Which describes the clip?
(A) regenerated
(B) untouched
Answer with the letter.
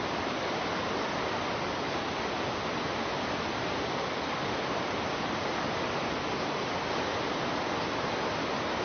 B